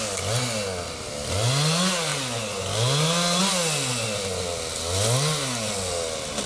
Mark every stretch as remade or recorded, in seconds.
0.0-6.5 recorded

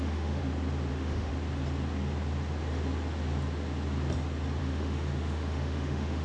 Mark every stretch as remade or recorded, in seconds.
0.0-0.4 remade; 0.4-0.9 recorded; 0.9-1.3 remade; 1.3-4.6 recorded; 4.6-6.2 remade

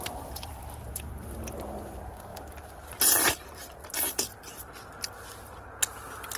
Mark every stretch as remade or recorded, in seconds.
0.0-6.4 recorded

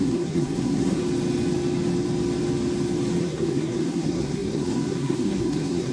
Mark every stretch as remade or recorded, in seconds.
0.0-1.0 remade; 1.0-3.2 recorded; 3.2-5.9 remade